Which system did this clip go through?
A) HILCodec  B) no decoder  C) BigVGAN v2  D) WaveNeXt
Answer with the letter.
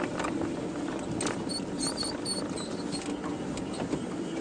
B